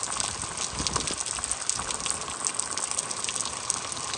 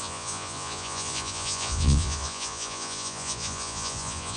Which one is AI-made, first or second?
second